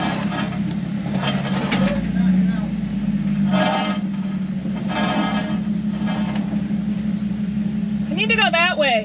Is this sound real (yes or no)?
yes